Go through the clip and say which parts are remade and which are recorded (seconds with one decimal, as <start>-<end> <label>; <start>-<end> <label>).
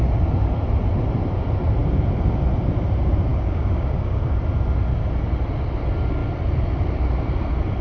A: 0.0-3.3 recorded; 3.3-4.2 remade; 4.2-7.8 recorded